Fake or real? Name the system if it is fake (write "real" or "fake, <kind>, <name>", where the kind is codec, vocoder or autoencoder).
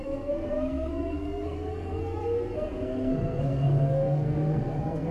fake, codec, SNAC